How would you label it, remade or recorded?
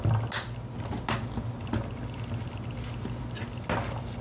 recorded